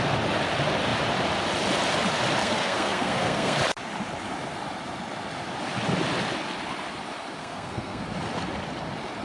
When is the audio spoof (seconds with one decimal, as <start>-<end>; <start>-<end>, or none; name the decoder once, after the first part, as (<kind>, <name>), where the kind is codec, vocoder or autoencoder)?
2.4-3.6 (codec, SNAC); 7.4-8.0